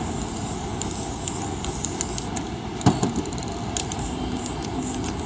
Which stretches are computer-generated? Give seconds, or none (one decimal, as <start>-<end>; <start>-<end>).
none